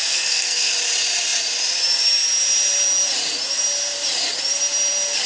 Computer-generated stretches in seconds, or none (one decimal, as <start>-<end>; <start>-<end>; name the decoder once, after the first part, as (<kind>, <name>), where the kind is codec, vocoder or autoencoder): 0.0-0.7 (codec, SNAC)